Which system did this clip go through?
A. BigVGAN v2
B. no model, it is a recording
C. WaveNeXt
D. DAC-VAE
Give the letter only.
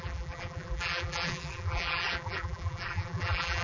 A